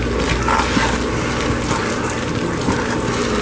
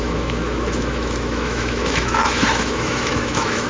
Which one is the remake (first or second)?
second